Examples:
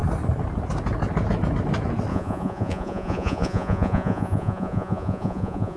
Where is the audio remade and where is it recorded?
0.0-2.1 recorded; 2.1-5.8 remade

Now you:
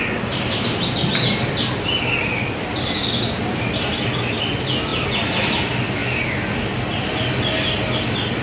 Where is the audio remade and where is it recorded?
0.0-8.4 recorded

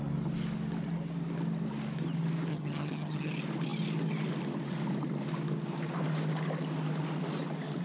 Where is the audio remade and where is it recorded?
0.0-2.5 recorded; 2.5-3.3 remade; 3.3-7.8 recorded

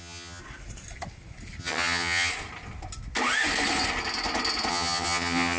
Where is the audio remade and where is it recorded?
0.0-0.4 remade; 0.4-1.6 recorded; 1.6-2.3 remade; 2.3-4.7 recorded; 4.7-5.6 remade

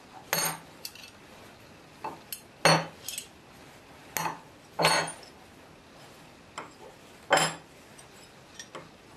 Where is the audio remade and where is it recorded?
0.0-9.2 recorded

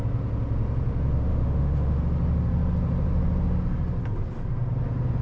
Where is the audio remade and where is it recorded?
0.0-1.3 recorded; 1.3-2.0 remade; 2.0-5.2 recorded